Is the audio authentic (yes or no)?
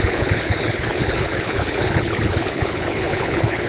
no